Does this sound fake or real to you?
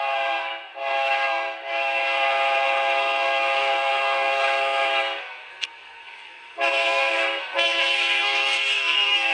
fake